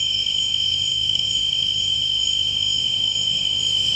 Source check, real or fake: fake